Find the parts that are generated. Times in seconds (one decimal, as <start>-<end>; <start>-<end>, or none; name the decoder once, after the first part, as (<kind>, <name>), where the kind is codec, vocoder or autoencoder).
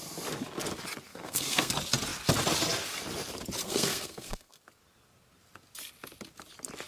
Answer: 1.1-1.7 (codec, SNAC); 3.6-4.6